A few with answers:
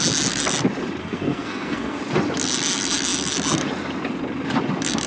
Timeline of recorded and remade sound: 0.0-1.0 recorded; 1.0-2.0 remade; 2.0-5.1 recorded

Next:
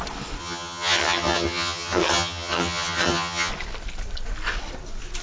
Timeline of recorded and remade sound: 0.0-0.4 recorded; 0.4-3.5 remade; 3.5-5.2 recorded

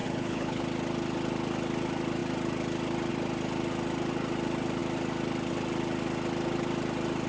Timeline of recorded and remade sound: 0.0-0.6 remade; 0.6-7.3 recorded

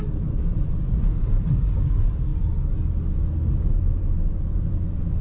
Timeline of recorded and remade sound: 0.0-1.1 recorded; 1.1-1.9 remade; 1.9-5.2 recorded

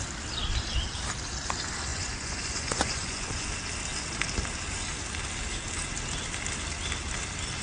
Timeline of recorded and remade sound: 0.0-1.9 recorded; 1.9-3.5 remade; 3.5-7.6 recorded

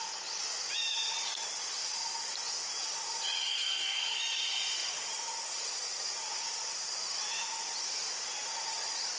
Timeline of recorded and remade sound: 0.0-3.5 recorded; 3.5-4.2 remade; 4.2-9.2 recorded

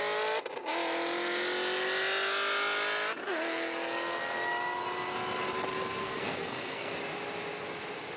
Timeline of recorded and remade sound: 0.0-6.0 recorded; 6.0-6.9 remade; 6.9-8.2 recorded